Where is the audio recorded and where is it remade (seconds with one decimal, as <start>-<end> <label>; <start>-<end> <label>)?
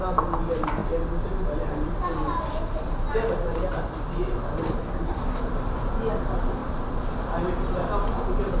0.0-4.8 recorded; 4.8-5.4 remade; 5.4-8.6 recorded